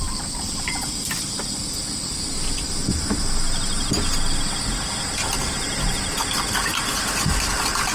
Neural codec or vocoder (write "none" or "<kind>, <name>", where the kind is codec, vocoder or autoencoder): none